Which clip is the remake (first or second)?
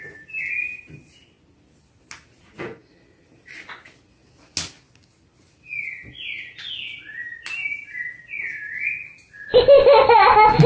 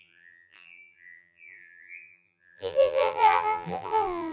second